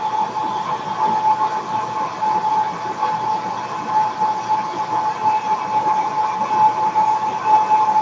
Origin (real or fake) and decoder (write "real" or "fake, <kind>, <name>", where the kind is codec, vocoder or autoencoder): real